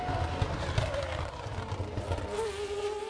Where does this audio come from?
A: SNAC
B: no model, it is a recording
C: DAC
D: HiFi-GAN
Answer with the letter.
B